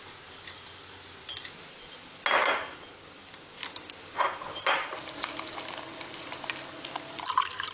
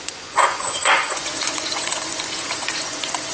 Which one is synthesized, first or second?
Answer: second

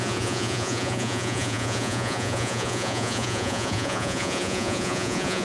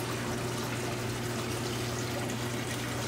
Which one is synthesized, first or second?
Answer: first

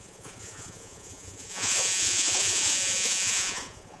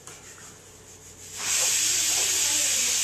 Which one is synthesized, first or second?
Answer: first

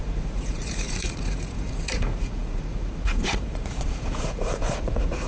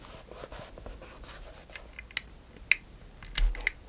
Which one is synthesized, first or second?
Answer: first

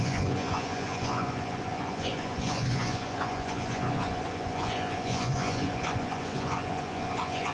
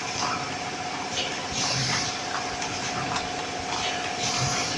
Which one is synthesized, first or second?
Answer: first